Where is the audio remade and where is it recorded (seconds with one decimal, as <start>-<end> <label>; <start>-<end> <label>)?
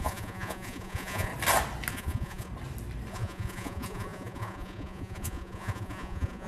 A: 0.0-1.3 remade; 1.3-1.9 recorded; 1.9-2.5 remade; 2.5-3.1 recorded; 3.1-6.5 remade